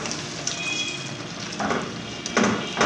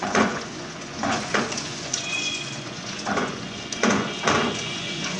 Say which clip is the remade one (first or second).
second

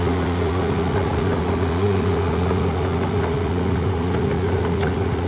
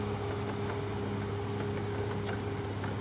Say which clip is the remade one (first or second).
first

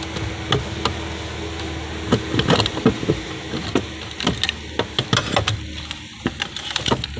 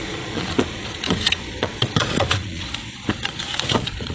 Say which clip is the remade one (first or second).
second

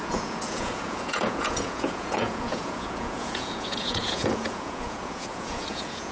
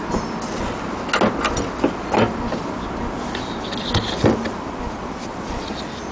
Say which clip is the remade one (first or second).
first